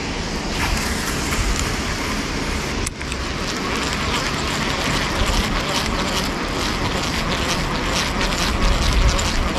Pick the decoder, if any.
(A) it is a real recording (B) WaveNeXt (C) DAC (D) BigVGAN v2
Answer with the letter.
A